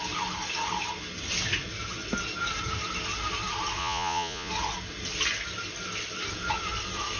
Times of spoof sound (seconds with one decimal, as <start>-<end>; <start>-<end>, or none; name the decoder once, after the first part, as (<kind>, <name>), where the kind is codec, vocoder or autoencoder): 3.8-4.5 (vocoder, Vocos)